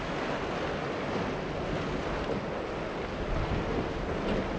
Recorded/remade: recorded